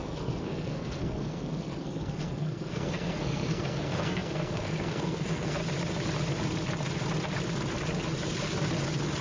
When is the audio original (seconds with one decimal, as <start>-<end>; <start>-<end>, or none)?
5.6-9.2